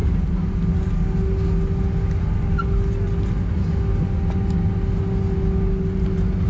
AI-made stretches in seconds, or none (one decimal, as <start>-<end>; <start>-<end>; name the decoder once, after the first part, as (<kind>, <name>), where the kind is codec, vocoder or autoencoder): none